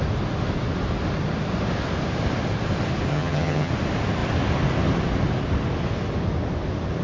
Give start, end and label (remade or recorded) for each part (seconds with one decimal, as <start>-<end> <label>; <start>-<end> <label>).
0.0-3.1 recorded; 3.1-3.7 remade; 3.7-7.0 recorded